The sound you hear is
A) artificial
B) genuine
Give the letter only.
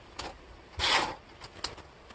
B